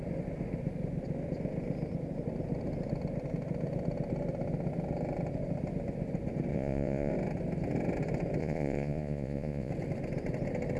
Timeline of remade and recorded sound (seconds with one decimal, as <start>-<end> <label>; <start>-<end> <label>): 0.0-6.5 recorded; 6.5-7.1 remade; 7.1-8.4 recorded; 8.4-9.7 remade; 9.7-10.8 recorded